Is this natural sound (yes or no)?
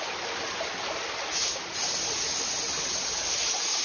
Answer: yes